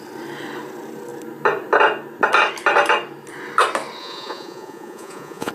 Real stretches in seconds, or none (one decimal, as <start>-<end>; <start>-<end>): 0.0-4.0